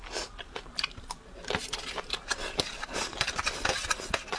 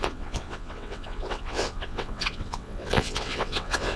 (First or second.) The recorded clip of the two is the first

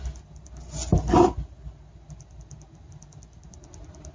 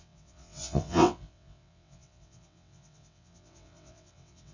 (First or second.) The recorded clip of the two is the first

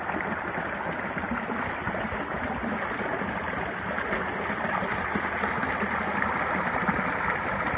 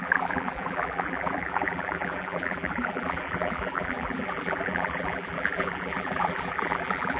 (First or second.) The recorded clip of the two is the first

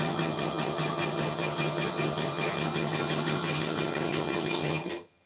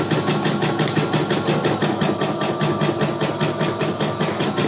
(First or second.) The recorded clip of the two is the second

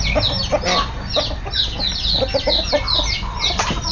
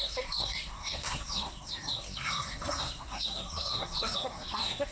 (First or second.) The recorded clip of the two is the first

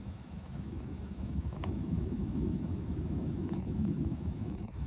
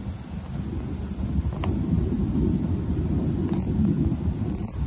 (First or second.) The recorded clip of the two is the second